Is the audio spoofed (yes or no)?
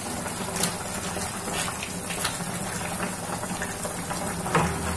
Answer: no